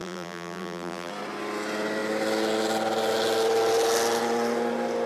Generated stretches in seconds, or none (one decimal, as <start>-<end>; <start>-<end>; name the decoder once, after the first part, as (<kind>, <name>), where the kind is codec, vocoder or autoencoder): 0.0-1.1 (vocoder, BigVGAN v2)